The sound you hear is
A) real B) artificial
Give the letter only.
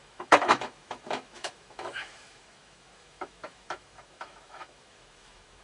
B